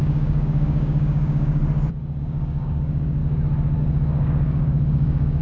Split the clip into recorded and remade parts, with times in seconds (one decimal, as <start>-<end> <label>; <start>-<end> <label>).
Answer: 0.0-1.6 remade; 1.6-2.2 recorded; 2.2-3.2 remade; 3.2-3.8 recorded; 3.8-5.4 remade